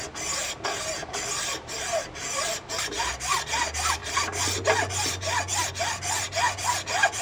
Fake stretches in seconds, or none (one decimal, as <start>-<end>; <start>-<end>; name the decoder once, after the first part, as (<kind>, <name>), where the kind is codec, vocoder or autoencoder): none

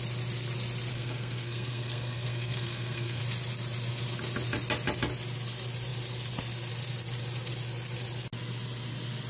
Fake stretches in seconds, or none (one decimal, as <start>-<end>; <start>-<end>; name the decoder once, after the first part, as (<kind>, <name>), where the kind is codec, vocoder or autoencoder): 0.9-3.2 (codec, SNAC)

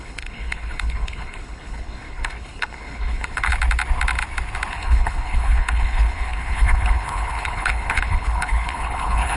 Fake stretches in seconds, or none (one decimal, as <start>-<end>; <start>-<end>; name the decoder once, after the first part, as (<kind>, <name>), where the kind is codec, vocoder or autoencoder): 0.0-3.5 (codec, HILCodec); 4.7-9.4

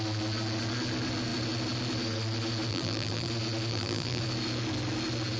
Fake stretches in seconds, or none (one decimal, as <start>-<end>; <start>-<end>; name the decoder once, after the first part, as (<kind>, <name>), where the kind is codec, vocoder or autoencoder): 2.7-3.3 (vocoder, BigVGAN v2); 3.7-4.2

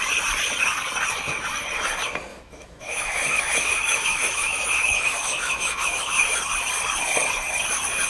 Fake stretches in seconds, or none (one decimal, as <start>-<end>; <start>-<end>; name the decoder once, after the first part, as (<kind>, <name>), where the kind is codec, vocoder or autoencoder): 2.3-6.4 (autoencoder, DAC-VAE)

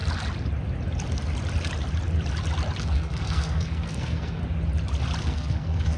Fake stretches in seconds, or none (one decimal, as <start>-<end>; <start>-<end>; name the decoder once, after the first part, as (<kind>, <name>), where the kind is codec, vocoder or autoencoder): 2.8-4.4 (codec, SNAC); 5.2-6.0

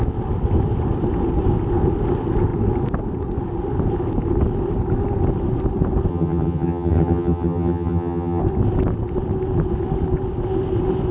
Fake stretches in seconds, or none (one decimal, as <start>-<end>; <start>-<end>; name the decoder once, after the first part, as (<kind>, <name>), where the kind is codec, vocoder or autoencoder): 6.1-8.4 (vocoder, HiFi-GAN)